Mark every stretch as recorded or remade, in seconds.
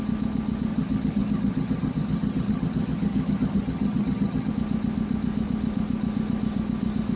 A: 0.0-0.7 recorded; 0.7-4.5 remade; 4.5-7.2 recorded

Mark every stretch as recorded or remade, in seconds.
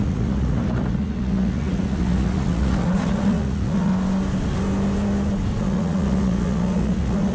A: 0.0-3.9 remade; 3.9-5.6 recorded; 5.6-7.3 remade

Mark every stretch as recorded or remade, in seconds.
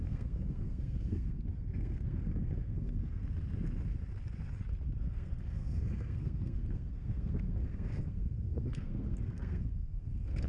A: 0.0-3.2 remade; 3.2-5.0 recorded; 5.0-10.5 remade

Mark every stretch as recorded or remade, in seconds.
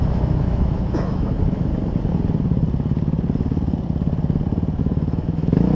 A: 0.0-1.7 remade; 1.7-4.8 recorded; 4.8-5.7 remade